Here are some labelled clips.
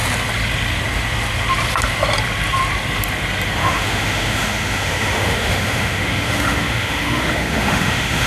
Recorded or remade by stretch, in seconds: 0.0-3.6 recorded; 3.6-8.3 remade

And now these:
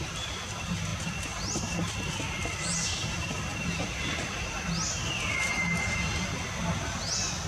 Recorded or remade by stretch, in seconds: 0.0-7.5 recorded

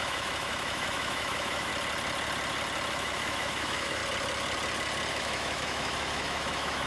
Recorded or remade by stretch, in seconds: 0.0-1.7 remade; 1.7-2.9 recorded; 2.9-4.0 remade; 4.0-5.1 recorded; 5.1-6.9 remade

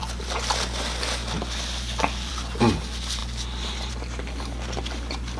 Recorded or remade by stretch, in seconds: 0.0-5.4 recorded

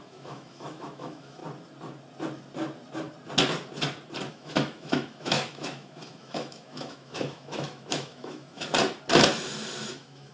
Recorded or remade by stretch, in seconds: 0.0-1.4 remade; 1.4-4.3 recorded; 4.3-8.7 remade; 8.7-9.9 recorded; 9.9-10.3 remade

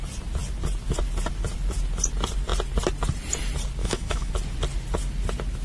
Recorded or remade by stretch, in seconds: 0.0-3.8 recorded; 3.8-4.3 remade; 4.3-5.6 recorded

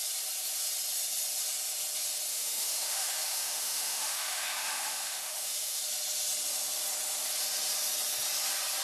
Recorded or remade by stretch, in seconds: 0.0-2.3 recorded; 2.3-5.8 remade; 5.8-8.8 recorded

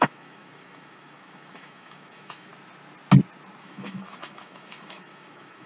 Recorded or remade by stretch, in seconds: 0.0-2.5 remade; 2.5-3.6 recorded; 3.6-5.7 remade